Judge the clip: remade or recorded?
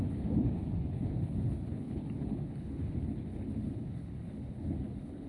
remade